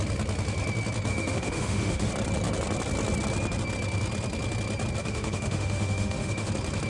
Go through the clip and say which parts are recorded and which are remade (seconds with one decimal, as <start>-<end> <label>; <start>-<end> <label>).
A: 0.0-1.1 recorded; 1.1-2.1 remade; 2.1-5.0 recorded; 5.0-6.5 remade; 6.5-6.9 recorded